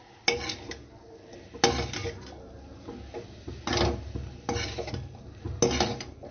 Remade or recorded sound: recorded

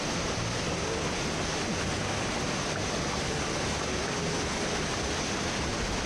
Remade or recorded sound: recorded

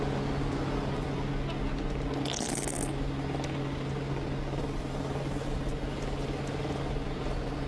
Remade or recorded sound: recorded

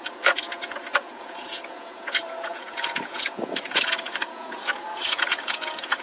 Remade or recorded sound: remade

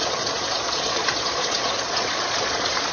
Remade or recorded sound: remade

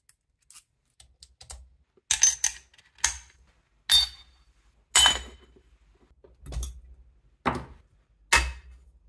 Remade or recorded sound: recorded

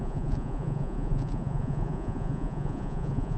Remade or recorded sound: remade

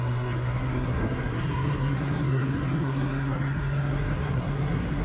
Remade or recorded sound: remade